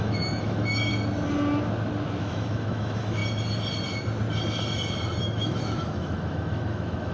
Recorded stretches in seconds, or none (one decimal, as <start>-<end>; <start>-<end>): 0.9-2.2; 3.2-5.2